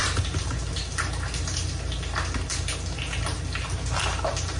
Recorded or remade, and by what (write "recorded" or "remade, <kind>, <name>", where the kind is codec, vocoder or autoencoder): recorded